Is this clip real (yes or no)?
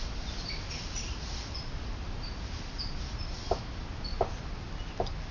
yes